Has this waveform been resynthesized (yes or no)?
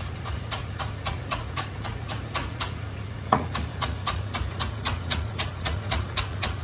yes